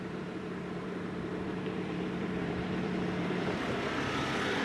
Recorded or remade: remade